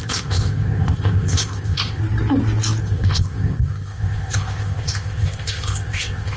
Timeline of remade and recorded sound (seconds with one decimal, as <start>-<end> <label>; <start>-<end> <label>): 0.0-2.0 remade; 2.0-2.8 recorded; 2.8-6.4 remade